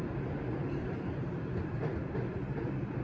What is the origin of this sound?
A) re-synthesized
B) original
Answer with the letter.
B